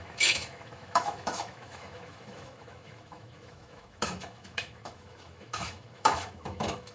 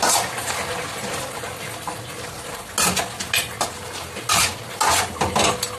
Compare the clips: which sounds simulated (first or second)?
first